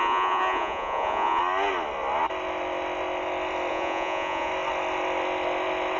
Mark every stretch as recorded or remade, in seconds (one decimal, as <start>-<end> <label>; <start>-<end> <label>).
0.0-1.4 remade; 1.4-3.7 recorded; 3.7-4.5 remade; 4.5-6.0 recorded